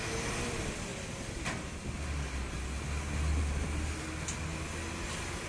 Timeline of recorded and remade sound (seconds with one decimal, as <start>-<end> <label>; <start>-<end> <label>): 0.0-5.5 recorded